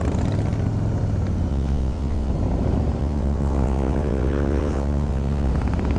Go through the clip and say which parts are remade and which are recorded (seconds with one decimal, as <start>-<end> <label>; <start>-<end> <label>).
0.0-1.5 recorded; 1.5-2.3 remade; 2.3-3.0 recorded; 3.0-5.5 remade; 5.5-6.0 recorded